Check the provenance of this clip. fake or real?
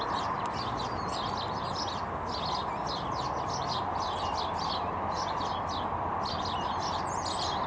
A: real